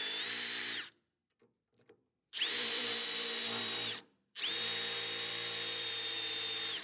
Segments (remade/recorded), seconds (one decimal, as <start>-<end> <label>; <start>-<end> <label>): 0.0-4.7 remade; 4.7-5.3 recorded; 5.3-6.8 remade